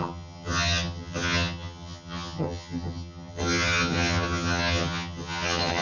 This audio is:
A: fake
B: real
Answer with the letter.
A